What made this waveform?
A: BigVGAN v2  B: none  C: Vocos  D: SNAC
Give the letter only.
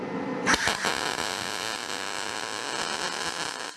B